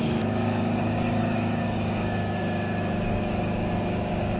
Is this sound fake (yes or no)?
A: yes